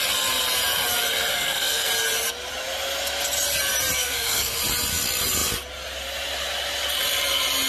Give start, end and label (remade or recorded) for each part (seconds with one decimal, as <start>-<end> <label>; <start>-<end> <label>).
0.0-1.3 recorded; 1.3-1.9 remade; 1.9-4.0 recorded; 4.0-4.6 remade; 4.6-7.7 recorded